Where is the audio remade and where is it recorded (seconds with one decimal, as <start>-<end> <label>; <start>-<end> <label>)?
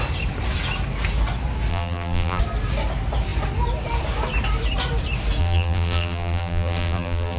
0.0-1.7 recorded; 1.7-2.4 remade; 2.4-5.4 recorded; 5.4-7.4 remade